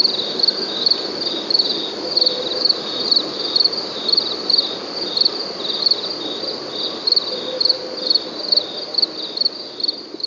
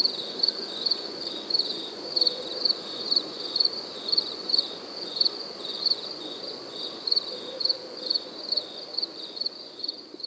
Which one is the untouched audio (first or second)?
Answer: first